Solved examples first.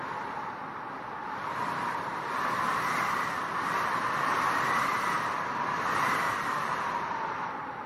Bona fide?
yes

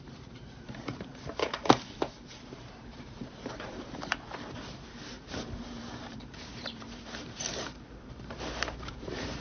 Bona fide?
no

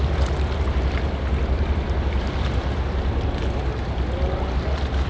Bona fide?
yes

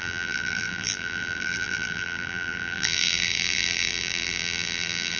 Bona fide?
no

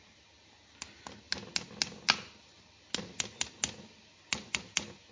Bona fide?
yes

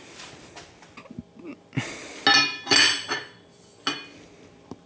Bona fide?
yes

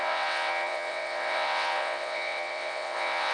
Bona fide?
no